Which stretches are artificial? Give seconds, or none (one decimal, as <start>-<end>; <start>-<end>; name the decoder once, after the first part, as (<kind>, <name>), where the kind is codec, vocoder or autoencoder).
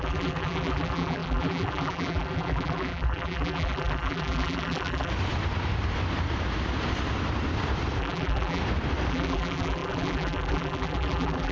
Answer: 0.0-5.1 (vocoder, BigVGAN v2); 8.0-8.6; 9.1-11.5